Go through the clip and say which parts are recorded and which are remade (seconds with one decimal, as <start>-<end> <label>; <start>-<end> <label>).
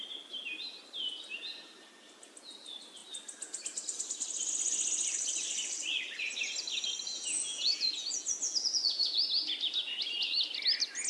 0.0-7.1 recorded; 7.1-9.2 remade; 9.2-11.1 recorded